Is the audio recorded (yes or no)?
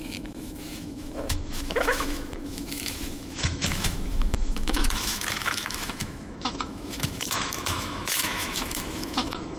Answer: no